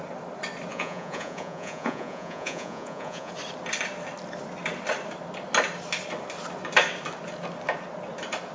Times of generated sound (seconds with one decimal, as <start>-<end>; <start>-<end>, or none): 0.7-3.3